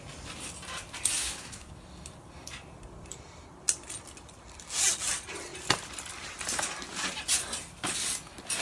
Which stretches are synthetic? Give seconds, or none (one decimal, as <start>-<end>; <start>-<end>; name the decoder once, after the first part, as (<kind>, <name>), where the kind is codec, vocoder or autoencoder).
1.2-1.7 (codec, SNAC)